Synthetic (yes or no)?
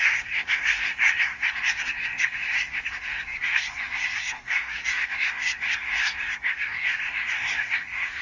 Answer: yes